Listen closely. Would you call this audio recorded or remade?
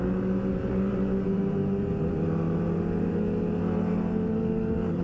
recorded